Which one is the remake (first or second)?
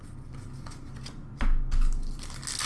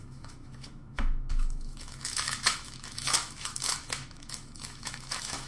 second